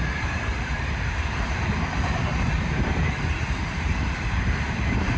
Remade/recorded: remade